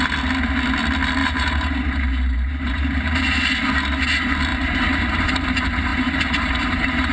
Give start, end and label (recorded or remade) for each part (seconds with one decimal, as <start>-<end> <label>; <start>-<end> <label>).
0.0-1.2 recorded; 1.2-3.4 remade; 3.4-4.5 recorded; 4.5-5.2 remade; 5.2-5.9 recorded; 5.9-7.1 remade